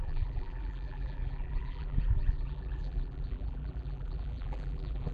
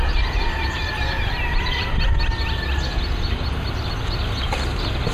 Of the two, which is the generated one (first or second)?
first